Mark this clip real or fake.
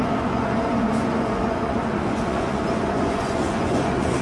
fake